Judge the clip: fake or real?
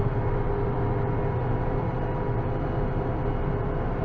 real